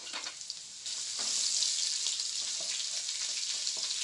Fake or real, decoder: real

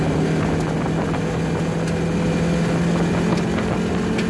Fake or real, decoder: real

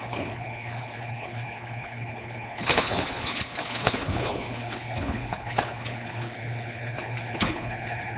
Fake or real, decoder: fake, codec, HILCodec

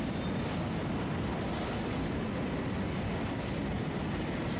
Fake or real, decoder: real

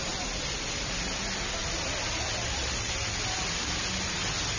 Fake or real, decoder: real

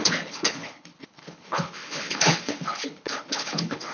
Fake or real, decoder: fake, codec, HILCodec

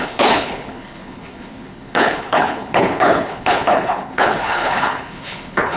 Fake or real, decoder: fake, codec, HILCodec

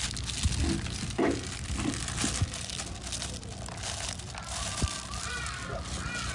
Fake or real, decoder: real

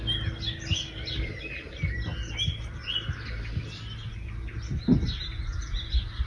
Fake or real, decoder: real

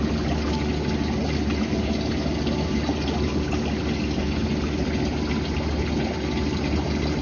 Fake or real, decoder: real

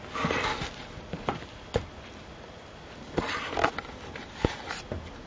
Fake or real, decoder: real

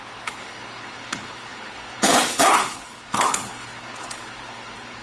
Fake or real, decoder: fake, codec, HILCodec